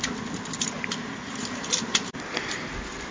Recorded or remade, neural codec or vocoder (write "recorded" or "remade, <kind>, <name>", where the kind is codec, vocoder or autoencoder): recorded